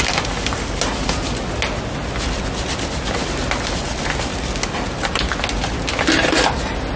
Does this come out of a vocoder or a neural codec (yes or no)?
no